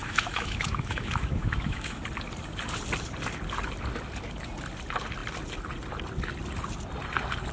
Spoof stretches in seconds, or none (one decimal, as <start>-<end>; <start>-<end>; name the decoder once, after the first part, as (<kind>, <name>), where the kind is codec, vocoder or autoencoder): 0.0-2.0 (autoencoder, DAC-VAE)

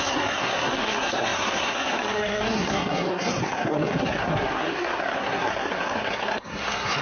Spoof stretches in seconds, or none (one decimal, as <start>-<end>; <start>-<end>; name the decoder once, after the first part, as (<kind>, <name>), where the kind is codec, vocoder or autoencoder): 0.0-7.0 (codec, SNAC)

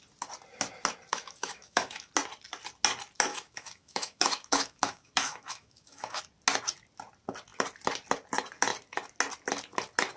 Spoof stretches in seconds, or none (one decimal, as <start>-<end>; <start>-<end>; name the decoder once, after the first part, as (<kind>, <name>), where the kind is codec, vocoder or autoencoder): 1.1-2.1 (autoencoder, DAC-VAE); 3.3-6.2

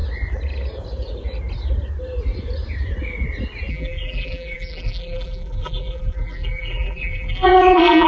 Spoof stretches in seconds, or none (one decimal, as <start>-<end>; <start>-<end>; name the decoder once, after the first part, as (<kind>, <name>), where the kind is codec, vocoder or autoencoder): 3.7-8.1 (vocoder, BigVGAN v2)